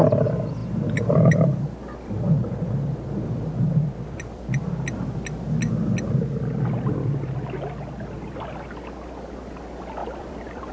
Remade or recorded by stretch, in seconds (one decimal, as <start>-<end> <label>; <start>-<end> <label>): 0.0-0.6 recorded; 0.6-4.7 remade; 4.7-10.0 recorded; 10.0-10.7 remade